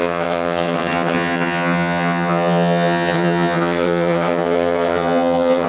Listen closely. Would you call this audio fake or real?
fake